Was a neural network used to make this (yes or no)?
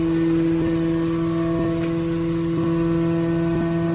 no